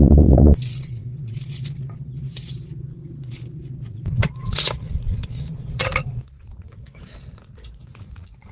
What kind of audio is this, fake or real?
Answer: fake